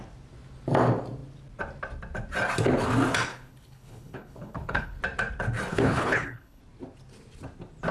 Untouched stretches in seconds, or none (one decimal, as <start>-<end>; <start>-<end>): 0.0-3.3; 5.0-5.7; 6.6-7.9